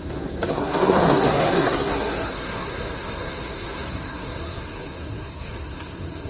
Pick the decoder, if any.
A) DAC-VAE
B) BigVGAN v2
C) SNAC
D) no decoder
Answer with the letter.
C